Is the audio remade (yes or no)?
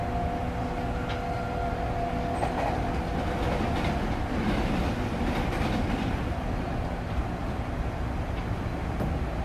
no